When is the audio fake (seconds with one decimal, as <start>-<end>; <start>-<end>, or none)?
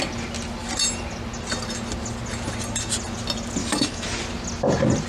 3.6-4.2